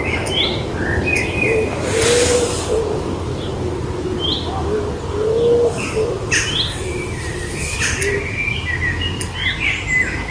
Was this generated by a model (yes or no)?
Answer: no